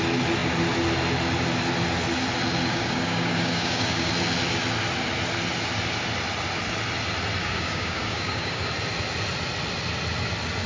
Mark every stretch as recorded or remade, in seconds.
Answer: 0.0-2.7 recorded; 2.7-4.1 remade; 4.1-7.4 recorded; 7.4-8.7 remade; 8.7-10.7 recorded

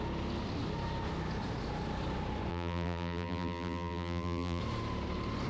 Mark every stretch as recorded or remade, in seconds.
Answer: 0.0-2.5 recorded; 2.5-4.6 remade; 4.6-5.5 recorded

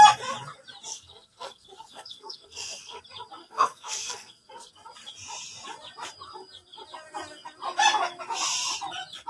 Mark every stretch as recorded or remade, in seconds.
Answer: 0.0-0.9 recorded; 0.9-3.0 remade; 3.0-3.4 recorded; 3.4-4.7 remade; 4.7-9.3 recorded

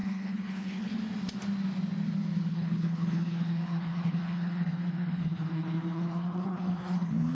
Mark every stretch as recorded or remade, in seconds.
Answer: 0.0-1.0 remade; 1.0-2.5 recorded; 2.5-7.3 remade

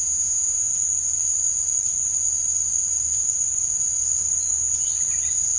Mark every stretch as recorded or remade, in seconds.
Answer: 0.0-0.7 remade; 0.7-5.6 recorded